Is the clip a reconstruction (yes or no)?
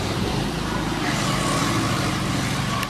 yes